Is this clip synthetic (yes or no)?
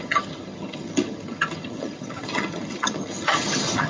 yes